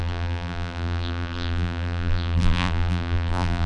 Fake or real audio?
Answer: fake